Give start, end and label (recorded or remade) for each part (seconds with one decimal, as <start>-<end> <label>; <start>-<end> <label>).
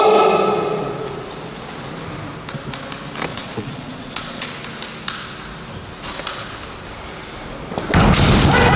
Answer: 0.0-3.3 recorded; 3.3-4.5 remade; 4.5-8.8 recorded